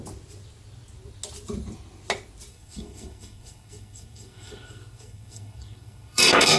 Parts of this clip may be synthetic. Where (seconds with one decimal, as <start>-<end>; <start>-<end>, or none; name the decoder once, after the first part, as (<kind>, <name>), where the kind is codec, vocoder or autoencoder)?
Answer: 2.5-6.6 (codec, SNAC)